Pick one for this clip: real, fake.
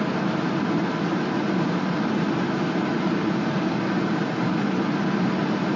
real